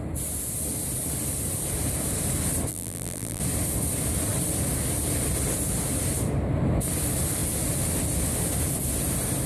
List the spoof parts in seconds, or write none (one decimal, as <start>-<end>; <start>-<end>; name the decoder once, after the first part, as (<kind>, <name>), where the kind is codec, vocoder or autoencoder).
2.7-3.4 (vocoder, BigVGAN v2)